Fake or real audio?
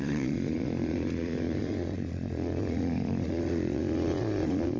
fake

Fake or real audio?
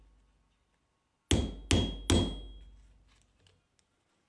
real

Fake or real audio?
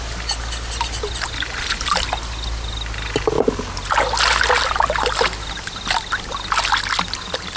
real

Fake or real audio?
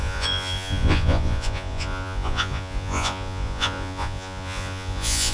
fake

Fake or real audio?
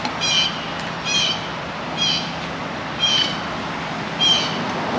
real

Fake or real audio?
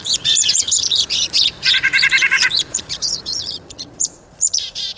fake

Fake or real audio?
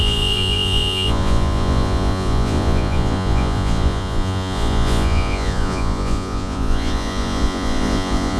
fake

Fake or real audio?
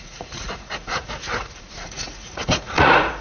fake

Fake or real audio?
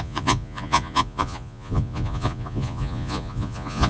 fake